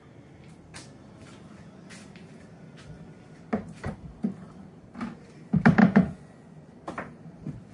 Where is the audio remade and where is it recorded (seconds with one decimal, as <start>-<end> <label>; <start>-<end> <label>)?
0.0-5.8 recorded; 5.8-6.7 remade; 6.7-7.7 recorded

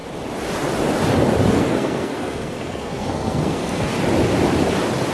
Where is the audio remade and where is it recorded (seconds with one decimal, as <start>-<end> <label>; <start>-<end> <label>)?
0.0-1.5 recorded; 1.5-3.9 remade; 3.9-5.1 recorded

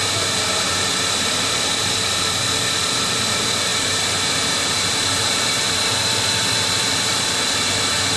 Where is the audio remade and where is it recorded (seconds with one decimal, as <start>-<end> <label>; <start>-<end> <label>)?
0.0-3.7 recorded; 3.7-7.6 remade; 7.6-8.2 recorded

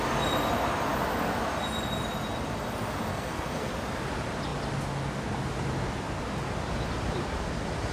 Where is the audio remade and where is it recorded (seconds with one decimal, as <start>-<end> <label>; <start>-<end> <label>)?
0.0-3.1 recorded; 3.1-3.7 remade; 3.7-7.9 recorded

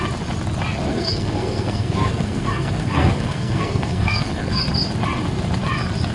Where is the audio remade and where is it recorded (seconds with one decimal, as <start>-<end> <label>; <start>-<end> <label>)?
0.0-0.9 recorded; 0.9-4.6 remade; 4.6-6.1 recorded

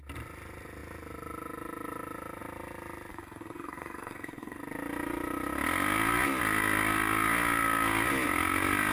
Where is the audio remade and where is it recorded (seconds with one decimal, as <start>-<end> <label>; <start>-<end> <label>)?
0.0-3.1 recorded; 3.1-4.6 remade; 4.6-8.9 recorded